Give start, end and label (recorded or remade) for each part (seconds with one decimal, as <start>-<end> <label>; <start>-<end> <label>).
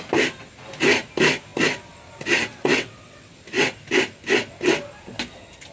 0.0-2.5 recorded; 2.5-3.3 remade; 3.3-5.7 recorded